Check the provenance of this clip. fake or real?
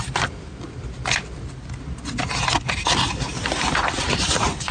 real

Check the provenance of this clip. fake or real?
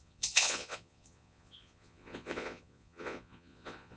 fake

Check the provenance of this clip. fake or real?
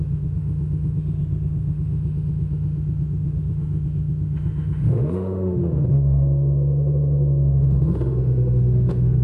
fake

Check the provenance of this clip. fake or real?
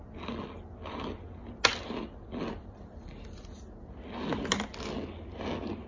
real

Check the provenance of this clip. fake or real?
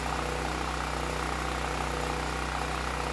real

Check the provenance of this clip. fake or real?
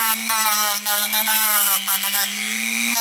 fake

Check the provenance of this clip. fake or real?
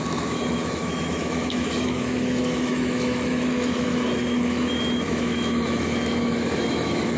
fake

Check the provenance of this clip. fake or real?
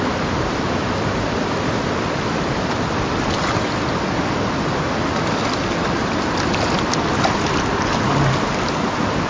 real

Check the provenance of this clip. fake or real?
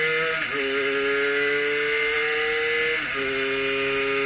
real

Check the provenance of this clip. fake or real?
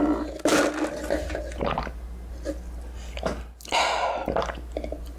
real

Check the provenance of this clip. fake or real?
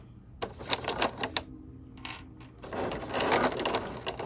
real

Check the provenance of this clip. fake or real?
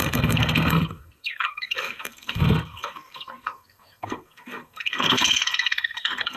fake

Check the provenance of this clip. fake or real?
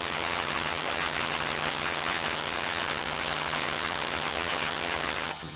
fake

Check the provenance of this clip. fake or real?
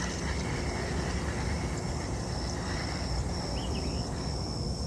real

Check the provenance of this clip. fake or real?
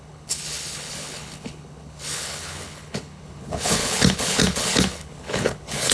fake